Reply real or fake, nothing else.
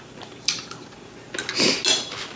real